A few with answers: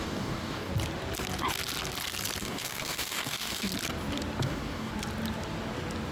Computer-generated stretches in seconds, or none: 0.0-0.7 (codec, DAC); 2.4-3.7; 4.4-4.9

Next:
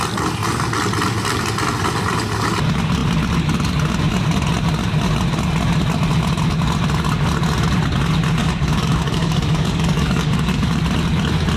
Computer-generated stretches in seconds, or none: 8.4-10.8 (codec, DAC)

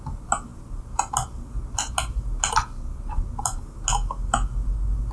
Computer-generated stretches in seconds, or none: none

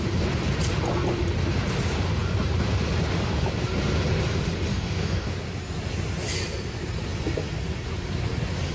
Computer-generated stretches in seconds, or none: 4.7-5.3 (codec, DAC)